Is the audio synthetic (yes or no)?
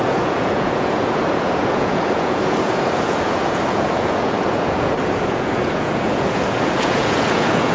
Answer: yes